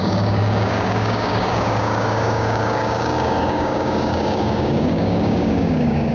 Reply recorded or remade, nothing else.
remade